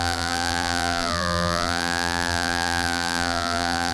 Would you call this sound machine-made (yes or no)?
yes